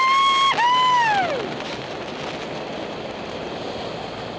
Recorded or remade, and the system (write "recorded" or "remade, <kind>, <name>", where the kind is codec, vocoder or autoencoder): recorded